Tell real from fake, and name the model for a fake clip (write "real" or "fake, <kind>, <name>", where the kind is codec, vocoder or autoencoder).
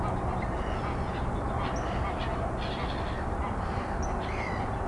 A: real